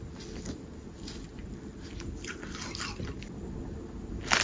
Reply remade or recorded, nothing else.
recorded